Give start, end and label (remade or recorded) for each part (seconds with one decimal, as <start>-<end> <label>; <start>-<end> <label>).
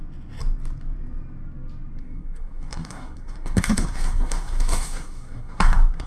0.0-2.0 recorded; 2.0-6.1 remade